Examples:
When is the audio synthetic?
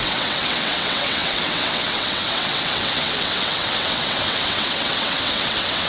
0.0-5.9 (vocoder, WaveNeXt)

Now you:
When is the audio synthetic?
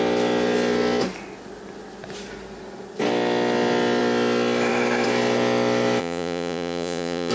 6.0-7.3 (vocoder, Vocos)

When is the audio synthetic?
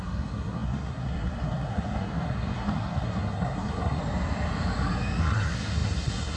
0.0-4.0 (codec, SNAC); 5.2-6.4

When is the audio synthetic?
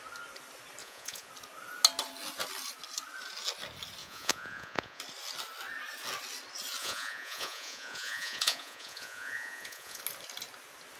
0.8-1.3 (vocoder, Vocos); 4.0-5.0; 6.8-10.0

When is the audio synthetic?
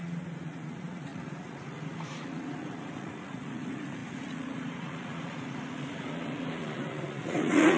0.0-7.8 (vocoder, Vocos)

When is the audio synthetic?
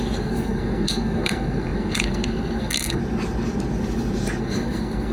0.0-3.0 (codec, SNAC); 4.4-5.1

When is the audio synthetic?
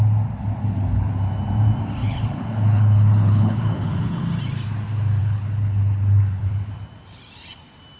0.6-1.1 (codec, HILCodec); 2.0-4.2; 5.2-6.7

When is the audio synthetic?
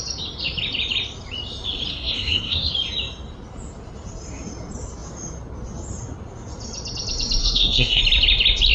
1.9-2.7 (codec, SNAC); 7.4-8.0